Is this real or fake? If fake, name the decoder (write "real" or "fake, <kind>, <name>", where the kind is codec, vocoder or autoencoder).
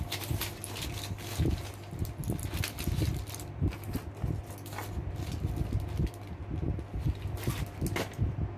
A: real